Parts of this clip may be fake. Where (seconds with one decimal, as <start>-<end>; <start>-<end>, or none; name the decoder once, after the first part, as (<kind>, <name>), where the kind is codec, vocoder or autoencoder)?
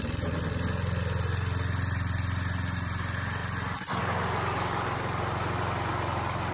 none